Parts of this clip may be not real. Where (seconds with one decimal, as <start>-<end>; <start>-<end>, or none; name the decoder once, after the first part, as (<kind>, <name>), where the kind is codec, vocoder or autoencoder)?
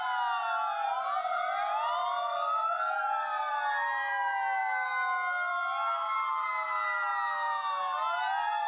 none